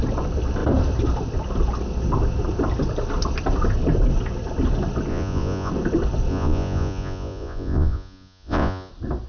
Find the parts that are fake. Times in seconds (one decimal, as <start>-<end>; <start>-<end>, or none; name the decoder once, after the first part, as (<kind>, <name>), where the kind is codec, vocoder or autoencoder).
5.1-5.7 (vocoder, Vocos); 6.3-8.9